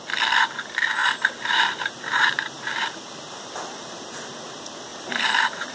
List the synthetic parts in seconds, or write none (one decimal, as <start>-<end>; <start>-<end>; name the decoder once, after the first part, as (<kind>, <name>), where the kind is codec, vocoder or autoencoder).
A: 1.0-4.4 (vocoder, BigVGAN v2); 4.9-5.7